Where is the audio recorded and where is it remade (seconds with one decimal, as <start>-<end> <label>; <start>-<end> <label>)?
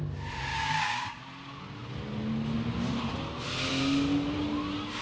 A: 0.0-0.5 recorded; 0.5-1.2 remade; 1.2-5.0 recorded